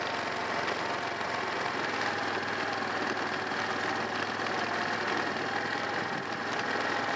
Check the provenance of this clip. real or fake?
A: real